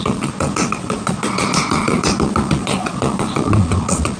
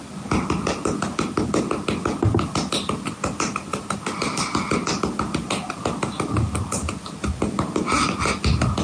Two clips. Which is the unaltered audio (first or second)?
second